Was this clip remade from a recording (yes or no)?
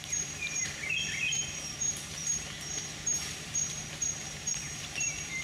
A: yes